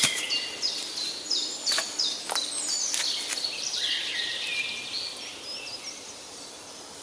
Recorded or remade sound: recorded